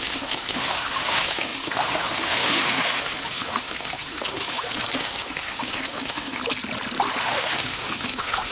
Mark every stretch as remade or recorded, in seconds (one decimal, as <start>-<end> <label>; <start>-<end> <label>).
0.0-6.4 remade; 6.4-7.2 recorded; 7.2-8.5 remade